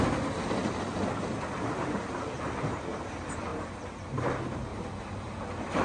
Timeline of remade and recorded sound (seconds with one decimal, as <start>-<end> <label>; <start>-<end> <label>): 0.0-3.5 recorded; 3.5-4.2 remade; 4.2-4.7 recorded; 4.7-5.8 remade